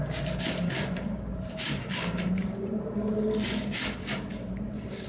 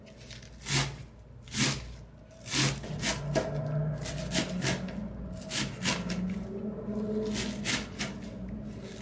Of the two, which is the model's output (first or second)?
first